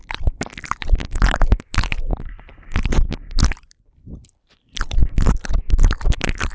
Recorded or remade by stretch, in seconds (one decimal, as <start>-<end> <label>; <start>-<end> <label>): 0.0-6.5 remade